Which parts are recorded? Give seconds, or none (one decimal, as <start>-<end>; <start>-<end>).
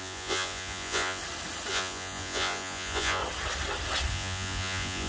1.2-1.7; 3.2-4.1